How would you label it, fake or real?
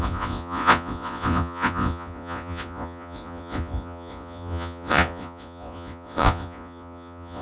fake